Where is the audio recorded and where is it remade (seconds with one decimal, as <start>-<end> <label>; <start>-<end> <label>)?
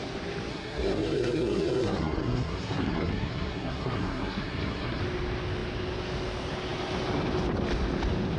0.0-0.5 recorded; 0.5-5.0 remade; 5.0-8.4 recorded